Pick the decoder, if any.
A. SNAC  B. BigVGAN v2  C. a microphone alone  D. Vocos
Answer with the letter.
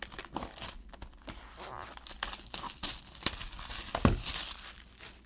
C